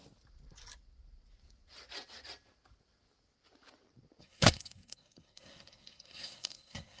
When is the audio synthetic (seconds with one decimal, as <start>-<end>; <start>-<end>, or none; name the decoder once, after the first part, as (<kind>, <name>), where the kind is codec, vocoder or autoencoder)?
4.2-7.0 (codec, SNAC)